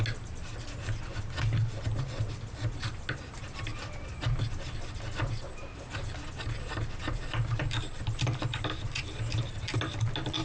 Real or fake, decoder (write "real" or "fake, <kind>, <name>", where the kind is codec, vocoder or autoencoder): real